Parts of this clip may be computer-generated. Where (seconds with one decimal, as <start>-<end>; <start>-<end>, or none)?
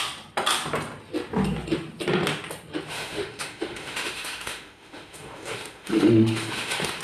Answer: 2.9-7.0